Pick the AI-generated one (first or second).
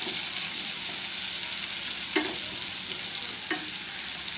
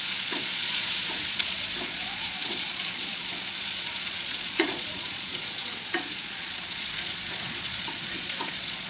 second